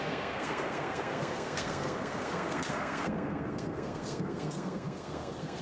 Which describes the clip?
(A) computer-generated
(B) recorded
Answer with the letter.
A